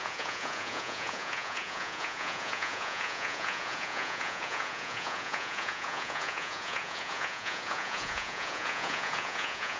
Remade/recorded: remade